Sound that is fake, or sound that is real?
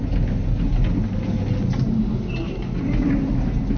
real